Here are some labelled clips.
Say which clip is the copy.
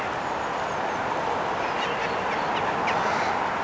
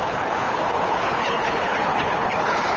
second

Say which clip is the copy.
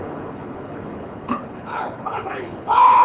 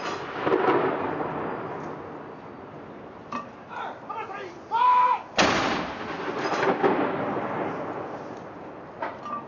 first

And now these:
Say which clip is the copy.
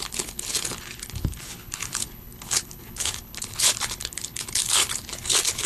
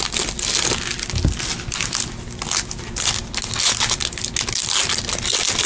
first